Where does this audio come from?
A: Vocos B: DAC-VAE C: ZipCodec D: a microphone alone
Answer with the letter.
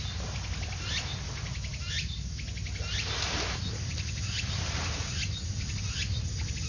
D